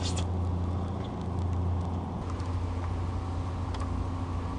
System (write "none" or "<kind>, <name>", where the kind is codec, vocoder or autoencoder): none